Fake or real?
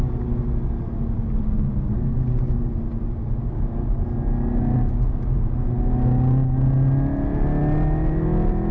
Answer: real